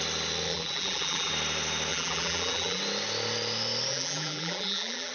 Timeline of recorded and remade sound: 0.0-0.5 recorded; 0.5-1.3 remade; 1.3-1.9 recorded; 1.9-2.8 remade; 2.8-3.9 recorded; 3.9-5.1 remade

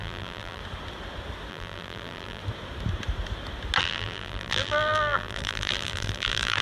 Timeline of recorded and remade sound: 0.0-0.6 remade; 0.6-1.5 recorded; 1.5-2.4 remade; 2.4-3.8 recorded; 3.8-6.6 remade

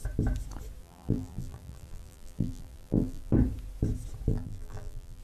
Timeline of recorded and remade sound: 0.0-0.8 recorded; 0.8-3.3 remade; 3.3-4.3 recorded; 4.3-5.2 remade

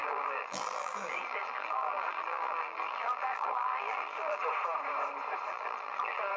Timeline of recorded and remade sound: 0.0-4.4 remade; 4.4-5.5 recorded; 5.5-6.4 remade

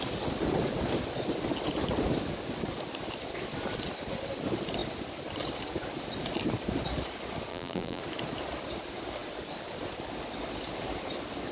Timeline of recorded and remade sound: 0.0-7.5 recorded; 7.5-8.0 remade; 8.0-11.5 recorded

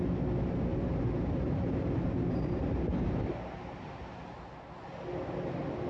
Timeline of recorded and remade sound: 0.0-0.7 recorded; 0.7-4.1 remade; 4.1-5.9 recorded